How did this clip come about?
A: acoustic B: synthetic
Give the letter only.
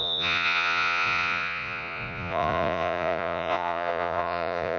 B